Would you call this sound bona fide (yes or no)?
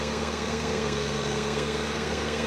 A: no